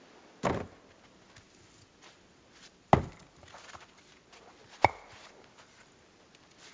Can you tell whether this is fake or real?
real